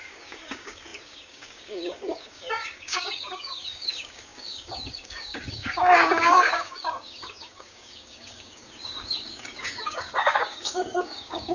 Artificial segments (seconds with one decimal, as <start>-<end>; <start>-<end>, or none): 0.0-11.5